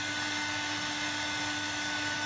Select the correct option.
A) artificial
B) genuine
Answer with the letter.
B